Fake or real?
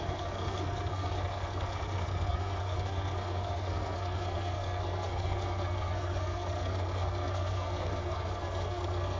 fake